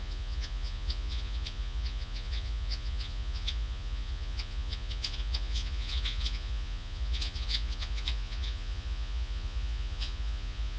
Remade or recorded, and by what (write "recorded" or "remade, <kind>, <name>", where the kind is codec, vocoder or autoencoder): remade, vocoder, Vocos